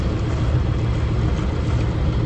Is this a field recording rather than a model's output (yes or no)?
yes